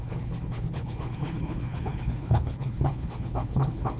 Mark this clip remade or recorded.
remade